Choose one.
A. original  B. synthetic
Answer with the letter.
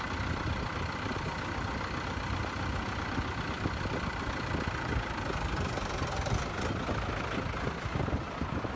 B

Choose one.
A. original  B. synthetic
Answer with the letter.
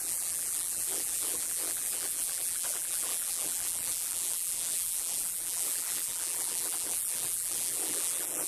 B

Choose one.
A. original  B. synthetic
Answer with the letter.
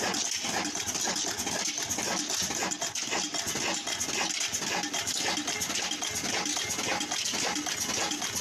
A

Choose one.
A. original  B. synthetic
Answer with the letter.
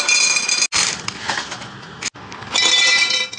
A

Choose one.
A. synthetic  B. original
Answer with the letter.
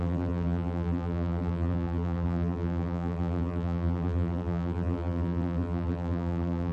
A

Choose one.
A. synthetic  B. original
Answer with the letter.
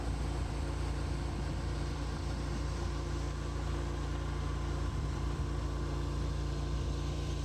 A